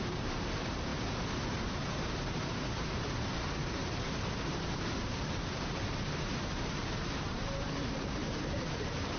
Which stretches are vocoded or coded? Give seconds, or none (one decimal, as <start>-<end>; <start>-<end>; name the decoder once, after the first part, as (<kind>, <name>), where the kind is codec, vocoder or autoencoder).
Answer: 0.0-0.9 (vocoder, BigVGAN v2); 1.7-9.2